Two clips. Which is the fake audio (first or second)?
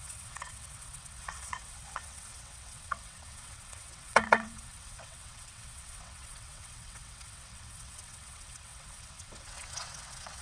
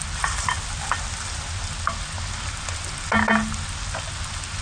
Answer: first